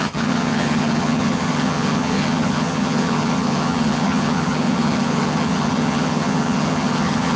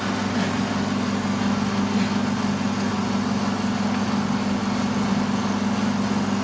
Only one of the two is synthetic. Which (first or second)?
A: first